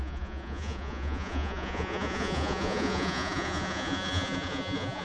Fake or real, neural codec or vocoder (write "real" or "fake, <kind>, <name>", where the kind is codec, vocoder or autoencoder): fake, vocoder, Vocos